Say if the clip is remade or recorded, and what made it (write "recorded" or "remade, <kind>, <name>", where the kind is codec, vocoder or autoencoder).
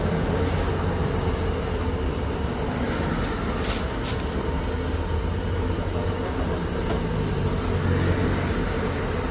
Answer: recorded